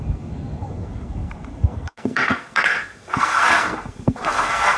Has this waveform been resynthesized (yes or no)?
yes